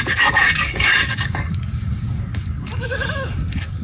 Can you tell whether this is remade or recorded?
remade